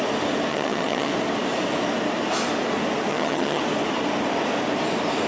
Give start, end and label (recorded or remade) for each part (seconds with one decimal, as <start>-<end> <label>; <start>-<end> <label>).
0.0-0.5 recorded; 0.5-1.1 remade; 1.1-3.1 recorded; 3.1-3.6 remade; 3.6-5.3 recorded